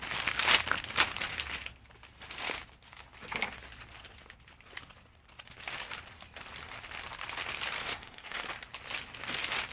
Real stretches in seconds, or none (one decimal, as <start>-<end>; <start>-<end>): 0.0-7.8; 8.4-9.7